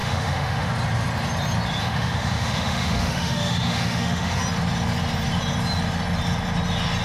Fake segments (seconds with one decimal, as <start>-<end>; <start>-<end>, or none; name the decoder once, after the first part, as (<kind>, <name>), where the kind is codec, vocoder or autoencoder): 0.0-0.7 (autoencoder, DAC-VAE); 1.8-4.4